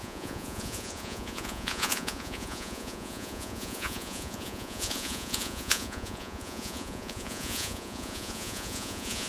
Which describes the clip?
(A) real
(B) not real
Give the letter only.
B